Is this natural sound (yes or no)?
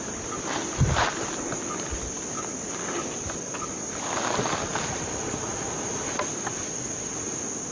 yes